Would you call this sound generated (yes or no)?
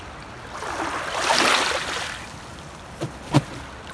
no